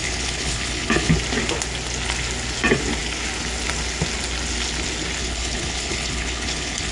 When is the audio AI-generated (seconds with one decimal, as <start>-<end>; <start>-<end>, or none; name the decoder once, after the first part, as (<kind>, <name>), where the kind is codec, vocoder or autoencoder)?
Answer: 0.0-1.1 (codec, HILCodec); 5.2-6.9